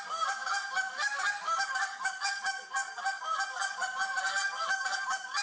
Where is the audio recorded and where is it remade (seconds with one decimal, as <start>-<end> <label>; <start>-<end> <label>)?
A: 0.0-5.4 remade